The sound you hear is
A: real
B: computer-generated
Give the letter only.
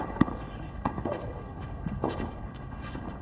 B